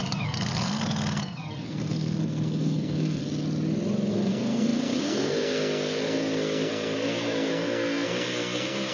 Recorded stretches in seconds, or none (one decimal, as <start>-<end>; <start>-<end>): 3.2-4.1

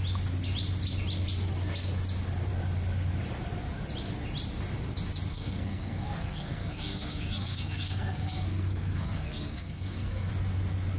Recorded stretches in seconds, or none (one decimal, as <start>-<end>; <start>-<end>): 0.0-5.3; 10.3-11.0

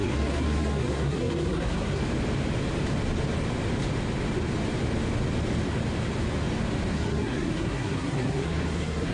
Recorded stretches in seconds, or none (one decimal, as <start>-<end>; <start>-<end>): 2.0-6.9

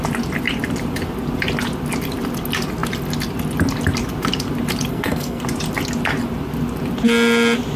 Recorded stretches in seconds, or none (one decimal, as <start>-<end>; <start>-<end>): 0.0-4.9; 5.4-7.8

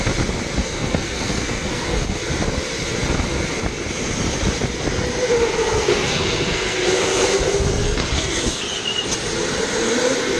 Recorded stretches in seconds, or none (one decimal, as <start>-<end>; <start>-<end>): 0.0-0.6; 2.2-5.6; 8.6-10.4